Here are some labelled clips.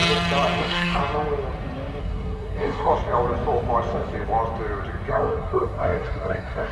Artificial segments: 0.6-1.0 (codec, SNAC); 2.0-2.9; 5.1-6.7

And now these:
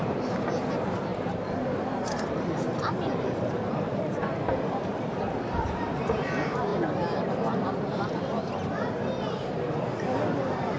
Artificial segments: 0.0-6.7 (vocoder, BigVGAN v2)

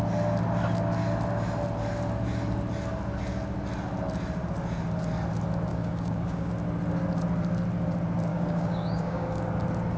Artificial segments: 5.7-6.5 (codec, DAC); 8.3-9.4

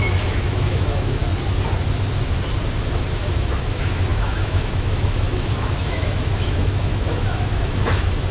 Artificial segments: 0.0-1.2 (autoencoder, DAC-VAE); 3.2-8.3

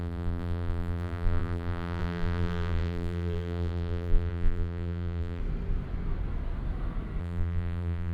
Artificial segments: 0.0-5.4 (vocoder, BigVGAN v2); 7.2-8.1

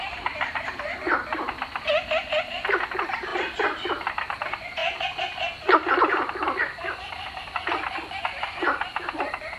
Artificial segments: none

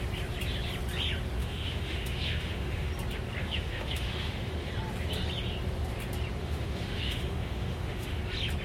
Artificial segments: 1.4-2.9 (autoencoder, DAC-VAE); 3.4-4.7; 6.4-8.2

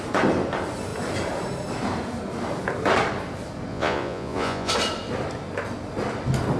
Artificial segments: 3.7-4.7 (vocoder, Vocos)